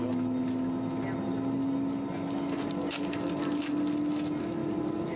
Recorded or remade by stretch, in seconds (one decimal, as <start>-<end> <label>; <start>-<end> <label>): 0.0-5.2 recorded